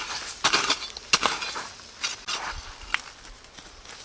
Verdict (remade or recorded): recorded